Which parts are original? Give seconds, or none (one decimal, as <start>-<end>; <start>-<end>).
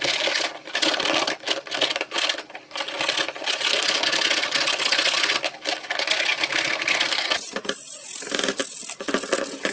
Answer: 0.0-6.3; 8.6-9.7